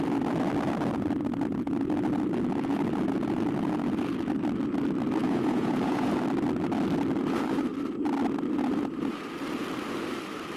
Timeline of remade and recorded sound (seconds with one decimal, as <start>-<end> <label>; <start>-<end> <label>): 0.0-5.2 recorded; 5.2-6.1 remade; 6.1-10.6 recorded